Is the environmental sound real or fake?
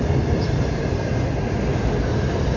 real